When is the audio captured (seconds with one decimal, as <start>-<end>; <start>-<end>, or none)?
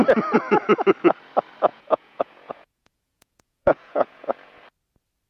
0.0-1.7; 4.6-5.3